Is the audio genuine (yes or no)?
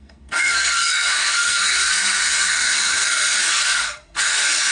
no